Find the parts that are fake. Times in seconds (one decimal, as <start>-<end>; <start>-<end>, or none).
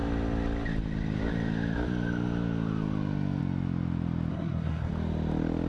4.3-4.9